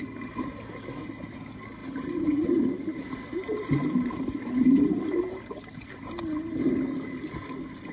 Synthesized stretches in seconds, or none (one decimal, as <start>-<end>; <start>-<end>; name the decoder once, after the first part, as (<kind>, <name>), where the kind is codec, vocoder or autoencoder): 1.8-4.8 (vocoder, BigVGAN v2)